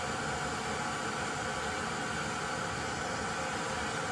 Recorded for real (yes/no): yes